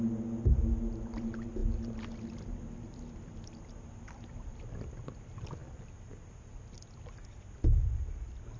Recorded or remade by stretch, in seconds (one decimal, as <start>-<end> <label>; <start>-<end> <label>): 0.0-8.6 recorded